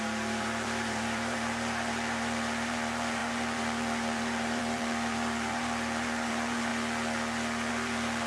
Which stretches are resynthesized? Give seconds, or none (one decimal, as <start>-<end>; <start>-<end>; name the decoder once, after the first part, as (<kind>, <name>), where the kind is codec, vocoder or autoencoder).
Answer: 0.0-6.7 (vocoder, BigVGAN v2); 7.7-8.3

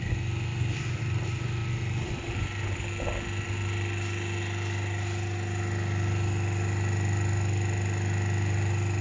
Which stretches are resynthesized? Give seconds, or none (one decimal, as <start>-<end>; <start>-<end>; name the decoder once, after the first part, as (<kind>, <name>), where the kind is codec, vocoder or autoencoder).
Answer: none

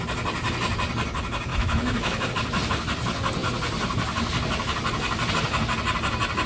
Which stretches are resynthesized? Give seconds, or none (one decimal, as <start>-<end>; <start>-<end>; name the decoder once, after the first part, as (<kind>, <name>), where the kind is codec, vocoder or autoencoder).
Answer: 1.5-2.3 (autoencoder, DAC-VAE)

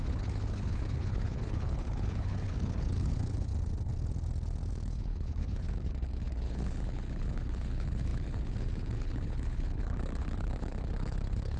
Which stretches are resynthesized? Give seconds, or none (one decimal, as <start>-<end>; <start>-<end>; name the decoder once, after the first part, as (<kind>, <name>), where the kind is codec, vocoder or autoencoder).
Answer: 0.0-3.5 (codec, HILCodec); 4.7-11.6

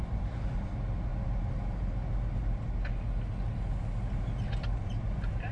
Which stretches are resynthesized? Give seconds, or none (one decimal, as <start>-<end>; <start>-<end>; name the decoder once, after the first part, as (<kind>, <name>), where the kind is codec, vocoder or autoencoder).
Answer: 0.0-1.1 (vocoder, BigVGAN v2); 4.4-5.5

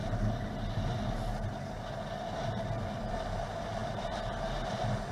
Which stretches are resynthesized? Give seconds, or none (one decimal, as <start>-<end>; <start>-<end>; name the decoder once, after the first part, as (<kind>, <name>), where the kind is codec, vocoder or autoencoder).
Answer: 3.8-4.3 (vocoder, BigVGAN v2)

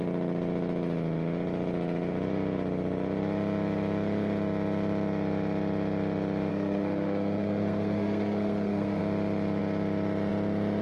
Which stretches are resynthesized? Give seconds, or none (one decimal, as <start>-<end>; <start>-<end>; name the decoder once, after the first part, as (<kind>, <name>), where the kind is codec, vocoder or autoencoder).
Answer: 6.5-9.0 (codec, SNAC)

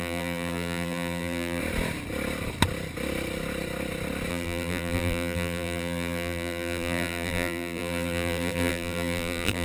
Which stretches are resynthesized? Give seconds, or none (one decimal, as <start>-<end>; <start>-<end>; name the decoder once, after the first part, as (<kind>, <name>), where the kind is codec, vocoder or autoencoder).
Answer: 0.0-1.6 (vocoder, BigVGAN v2); 4.3-9.6